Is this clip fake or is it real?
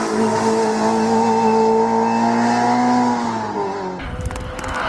real